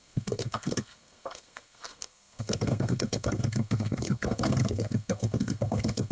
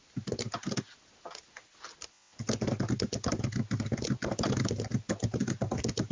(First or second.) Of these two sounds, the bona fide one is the second